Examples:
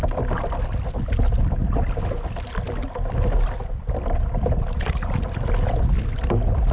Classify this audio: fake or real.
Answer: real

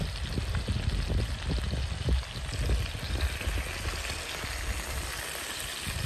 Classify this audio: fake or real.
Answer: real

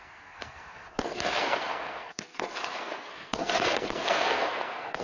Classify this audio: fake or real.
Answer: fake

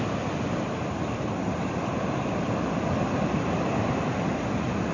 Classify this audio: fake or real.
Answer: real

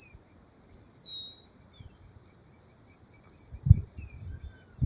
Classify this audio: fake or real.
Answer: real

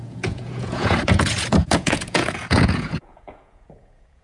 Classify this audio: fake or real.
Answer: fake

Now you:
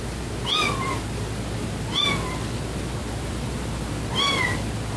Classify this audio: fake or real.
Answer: real